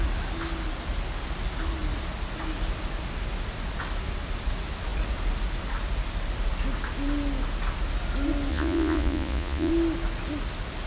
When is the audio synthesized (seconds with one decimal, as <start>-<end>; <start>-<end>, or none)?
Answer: 8.5-9.7